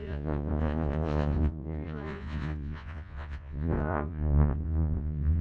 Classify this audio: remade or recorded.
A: remade